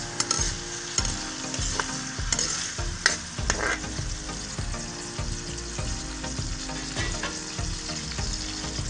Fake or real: real